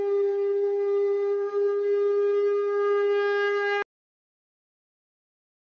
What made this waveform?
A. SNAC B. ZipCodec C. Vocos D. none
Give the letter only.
D